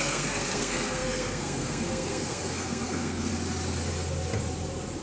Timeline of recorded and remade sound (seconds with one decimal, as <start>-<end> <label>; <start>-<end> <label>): 0.0-3.3 remade; 3.3-5.0 recorded